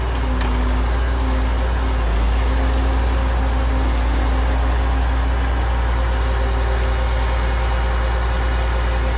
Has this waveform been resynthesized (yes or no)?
no